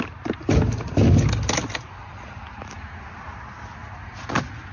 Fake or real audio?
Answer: real